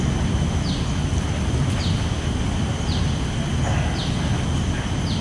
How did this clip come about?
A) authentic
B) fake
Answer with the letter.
A